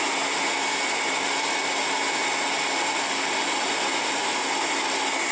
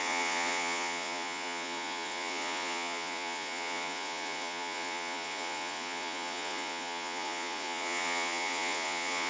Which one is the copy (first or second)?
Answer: second